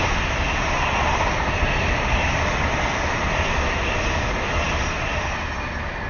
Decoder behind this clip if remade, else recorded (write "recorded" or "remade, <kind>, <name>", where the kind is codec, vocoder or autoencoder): recorded